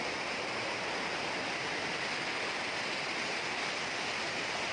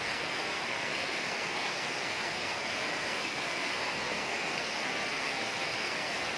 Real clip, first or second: first